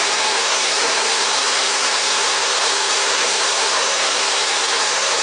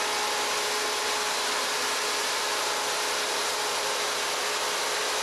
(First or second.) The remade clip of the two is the first